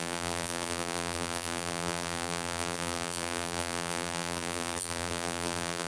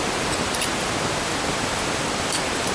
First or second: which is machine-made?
first